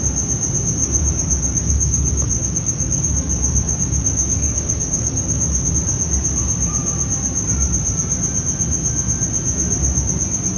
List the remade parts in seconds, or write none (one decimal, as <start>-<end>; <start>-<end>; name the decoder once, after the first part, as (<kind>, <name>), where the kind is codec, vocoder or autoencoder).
0.8-5.7 (codec, DAC)